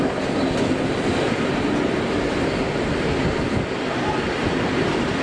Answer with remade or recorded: recorded